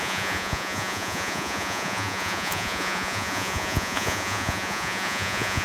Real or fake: fake